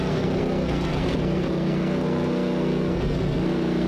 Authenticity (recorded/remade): remade